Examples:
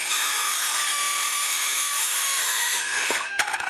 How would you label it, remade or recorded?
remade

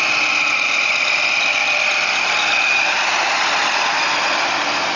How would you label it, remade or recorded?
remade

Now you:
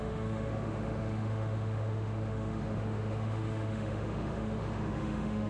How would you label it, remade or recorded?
remade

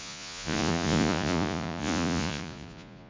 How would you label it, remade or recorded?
remade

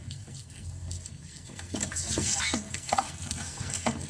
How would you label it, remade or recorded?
remade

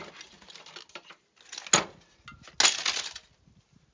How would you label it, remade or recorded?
recorded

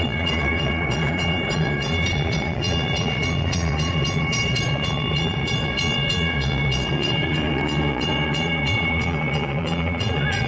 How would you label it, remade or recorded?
remade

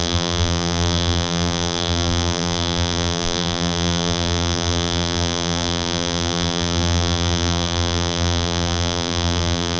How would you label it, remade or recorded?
remade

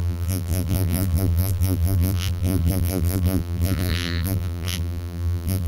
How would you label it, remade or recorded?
remade